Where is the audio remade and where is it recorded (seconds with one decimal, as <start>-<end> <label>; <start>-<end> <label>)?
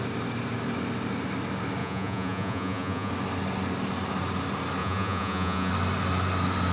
0.0-1.8 recorded; 1.8-3.1 remade; 3.1-4.8 recorded; 4.8-5.7 remade; 5.7-6.7 recorded